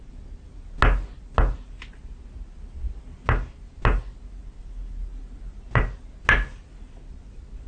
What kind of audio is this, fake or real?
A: real